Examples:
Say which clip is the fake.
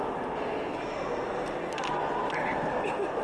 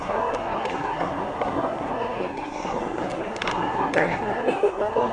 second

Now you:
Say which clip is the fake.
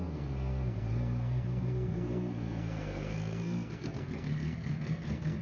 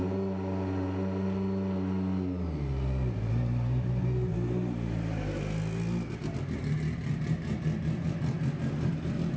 first